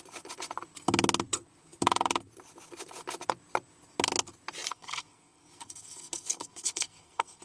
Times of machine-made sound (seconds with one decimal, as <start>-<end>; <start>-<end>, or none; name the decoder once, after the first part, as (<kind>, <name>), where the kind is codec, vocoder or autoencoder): 4.7-7.4 (codec, SNAC)